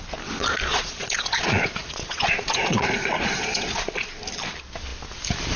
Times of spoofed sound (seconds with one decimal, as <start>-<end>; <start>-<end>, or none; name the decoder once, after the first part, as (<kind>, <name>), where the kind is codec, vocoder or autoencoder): 0.7-4.1 (vocoder, Vocos)